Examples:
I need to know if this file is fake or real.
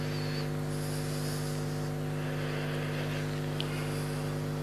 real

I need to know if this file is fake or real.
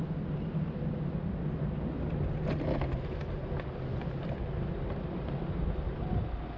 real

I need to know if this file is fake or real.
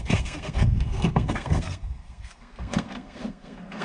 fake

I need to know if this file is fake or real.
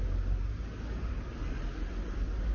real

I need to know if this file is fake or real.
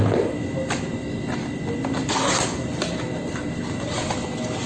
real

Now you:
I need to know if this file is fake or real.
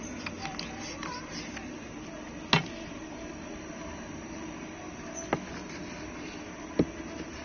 real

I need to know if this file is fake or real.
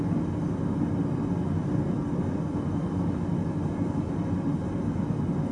real